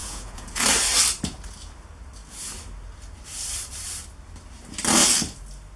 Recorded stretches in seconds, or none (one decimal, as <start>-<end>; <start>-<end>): 0.6-5.8